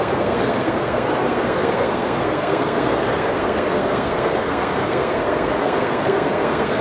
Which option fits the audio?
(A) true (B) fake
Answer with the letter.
B